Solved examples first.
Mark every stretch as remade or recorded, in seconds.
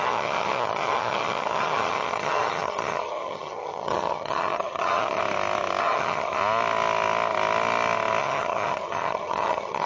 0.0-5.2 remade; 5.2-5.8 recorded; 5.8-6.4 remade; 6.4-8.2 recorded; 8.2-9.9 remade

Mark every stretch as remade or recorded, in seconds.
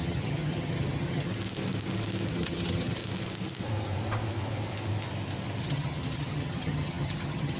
0.0-1.3 remade; 1.3-2.3 recorded; 2.3-3.0 remade; 3.0-5.6 recorded; 5.6-7.6 remade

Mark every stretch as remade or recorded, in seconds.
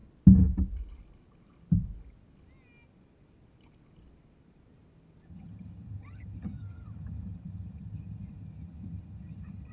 0.0-5.3 recorded; 5.3-9.7 remade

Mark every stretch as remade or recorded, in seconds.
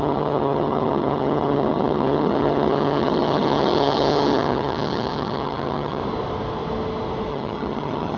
0.0-6.0 remade; 6.0-7.3 recorded; 7.3-8.2 remade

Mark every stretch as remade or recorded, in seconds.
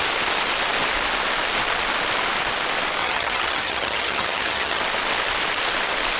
0.0-3.0 recorded; 3.0-4.8 remade; 4.8-6.2 recorded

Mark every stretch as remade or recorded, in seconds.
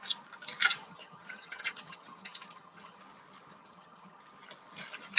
0.0-0.7 recorded; 0.7-3.0 remade; 3.0-3.6 recorded; 3.6-4.2 remade; 4.2-5.2 recorded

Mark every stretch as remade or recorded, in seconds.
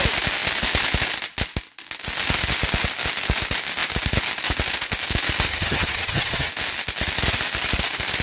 0.0-5.5 recorded; 5.5-6.5 remade; 6.5-8.2 recorded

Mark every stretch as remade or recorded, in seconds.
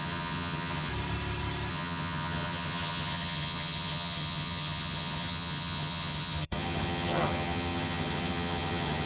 0.0-0.9 remade; 0.9-1.7 recorded; 1.7-9.1 remade